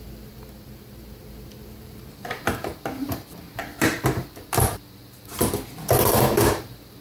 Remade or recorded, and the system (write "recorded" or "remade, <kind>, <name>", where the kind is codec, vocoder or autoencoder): remade, vocoder, BigVGAN v2